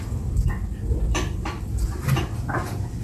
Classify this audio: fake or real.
real